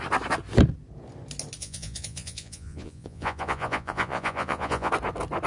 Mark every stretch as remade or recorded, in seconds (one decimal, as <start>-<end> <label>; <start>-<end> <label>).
0.0-1.6 recorded; 1.6-4.9 remade; 4.9-5.5 recorded